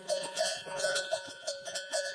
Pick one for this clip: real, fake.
fake